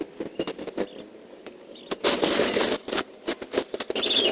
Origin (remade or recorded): recorded